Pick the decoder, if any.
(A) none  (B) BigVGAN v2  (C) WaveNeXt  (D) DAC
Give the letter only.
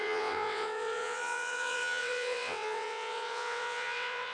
C